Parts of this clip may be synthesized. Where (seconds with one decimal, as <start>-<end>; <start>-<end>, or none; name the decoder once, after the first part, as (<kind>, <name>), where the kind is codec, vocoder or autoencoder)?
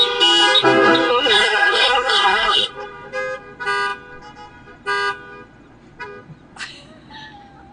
1.1-2.7 (codec, SNAC)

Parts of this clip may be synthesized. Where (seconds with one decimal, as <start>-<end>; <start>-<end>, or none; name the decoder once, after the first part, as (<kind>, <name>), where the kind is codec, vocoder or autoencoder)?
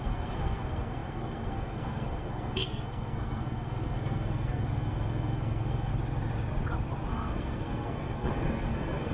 0.0-5.9 (codec, SNAC); 7.1-9.1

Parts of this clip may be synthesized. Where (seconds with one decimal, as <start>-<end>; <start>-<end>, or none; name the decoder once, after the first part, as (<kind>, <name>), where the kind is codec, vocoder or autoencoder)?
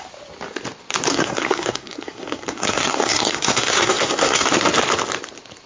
1.1-4.5 (codec, SNAC)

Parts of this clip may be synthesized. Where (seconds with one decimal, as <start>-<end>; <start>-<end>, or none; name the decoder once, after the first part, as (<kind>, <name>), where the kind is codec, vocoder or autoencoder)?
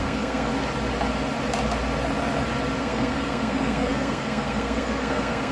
0.0-0.5 (codec, SNAC); 2.8-5.5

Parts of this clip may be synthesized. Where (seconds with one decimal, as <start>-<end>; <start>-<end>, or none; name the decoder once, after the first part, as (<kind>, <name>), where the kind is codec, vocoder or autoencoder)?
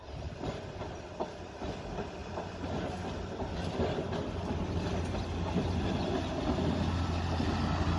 none